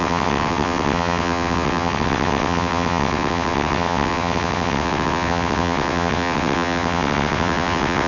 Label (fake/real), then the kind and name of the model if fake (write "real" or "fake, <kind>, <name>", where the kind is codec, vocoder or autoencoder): fake, vocoder, WaveNeXt